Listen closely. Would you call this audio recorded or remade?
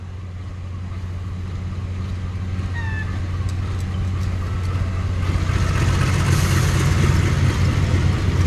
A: recorded